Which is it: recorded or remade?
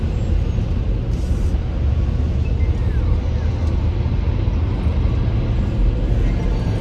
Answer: recorded